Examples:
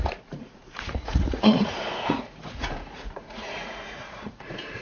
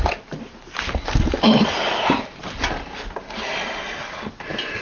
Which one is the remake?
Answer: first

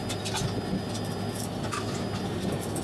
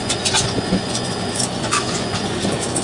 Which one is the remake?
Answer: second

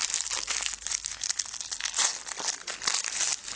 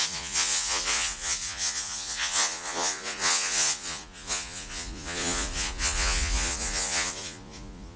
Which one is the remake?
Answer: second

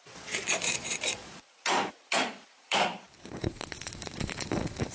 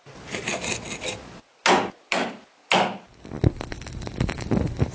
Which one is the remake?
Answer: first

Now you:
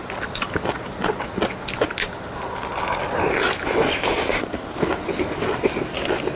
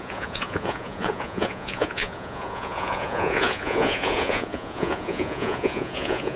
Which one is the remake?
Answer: second